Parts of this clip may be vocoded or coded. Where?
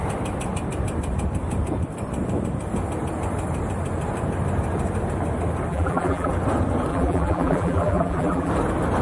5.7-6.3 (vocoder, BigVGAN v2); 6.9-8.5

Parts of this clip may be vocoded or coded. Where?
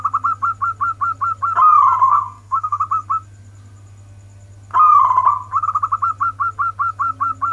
2.0-2.8 (codec, SNAC)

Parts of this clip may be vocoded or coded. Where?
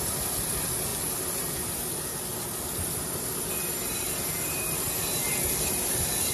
none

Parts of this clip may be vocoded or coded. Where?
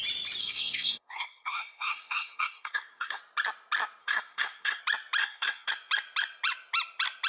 0.4-3.2 (codec, SNAC); 4.0-4.8; 5.2-5.7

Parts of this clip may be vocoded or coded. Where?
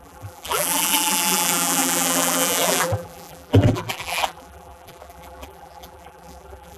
0.0-6.8 (vocoder, BigVGAN v2)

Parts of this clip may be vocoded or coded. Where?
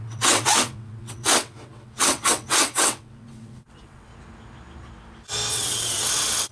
0.0-4.1 (vocoder, WaveNeXt); 5.5-6.5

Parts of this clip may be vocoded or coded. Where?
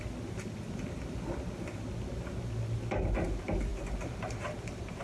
none